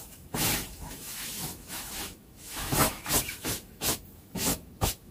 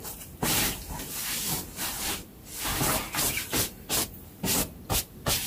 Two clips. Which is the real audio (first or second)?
second